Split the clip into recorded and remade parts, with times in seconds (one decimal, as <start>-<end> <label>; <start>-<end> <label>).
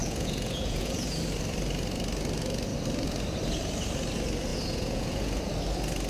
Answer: 0.0-1.2 remade; 1.2-4.5 recorded; 4.5-5.4 remade; 5.4-6.1 recorded